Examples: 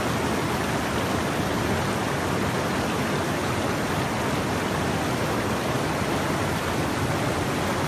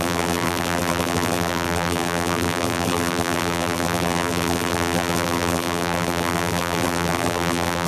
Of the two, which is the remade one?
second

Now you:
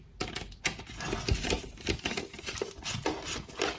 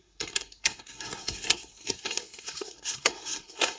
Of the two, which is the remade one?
second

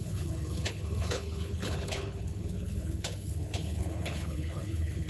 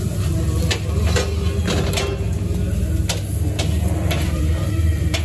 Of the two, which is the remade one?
first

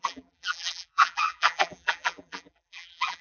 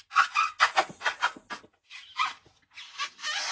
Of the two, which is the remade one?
first